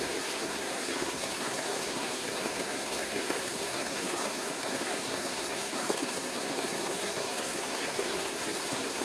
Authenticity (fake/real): fake